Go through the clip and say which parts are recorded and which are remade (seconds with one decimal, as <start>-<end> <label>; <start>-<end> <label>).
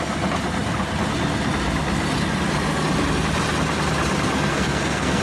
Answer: 0.0-4.5 recorded; 4.5-5.2 remade